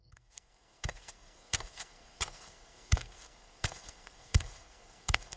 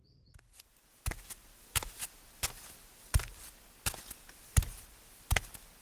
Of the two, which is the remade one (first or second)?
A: first